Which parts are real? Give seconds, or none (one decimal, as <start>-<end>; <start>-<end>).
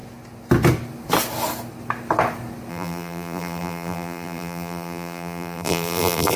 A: 0.0-2.7